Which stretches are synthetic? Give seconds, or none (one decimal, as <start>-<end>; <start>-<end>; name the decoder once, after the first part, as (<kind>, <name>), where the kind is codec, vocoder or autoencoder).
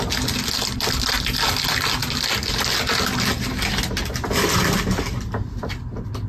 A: none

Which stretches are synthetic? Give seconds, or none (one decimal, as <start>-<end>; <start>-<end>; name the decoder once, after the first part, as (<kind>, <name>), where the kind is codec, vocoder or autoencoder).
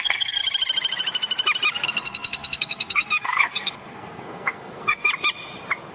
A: 0.0-0.4 (codec, SNAC); 1.7-5.1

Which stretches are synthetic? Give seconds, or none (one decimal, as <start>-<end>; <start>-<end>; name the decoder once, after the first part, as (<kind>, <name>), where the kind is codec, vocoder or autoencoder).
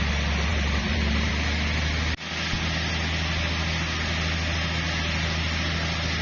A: 0.5-1.3 (vocoder, BigVGAN v2)